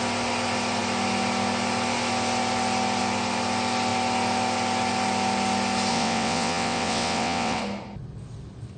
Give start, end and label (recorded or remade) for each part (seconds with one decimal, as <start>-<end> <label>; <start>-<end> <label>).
0.0-5.9 recorded; 5.9-7.6 remade; 7.6-8.8 recorded